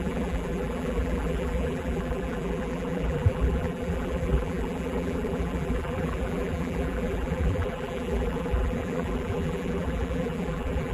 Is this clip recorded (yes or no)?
no